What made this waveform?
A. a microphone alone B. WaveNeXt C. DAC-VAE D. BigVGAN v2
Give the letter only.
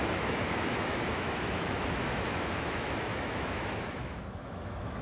C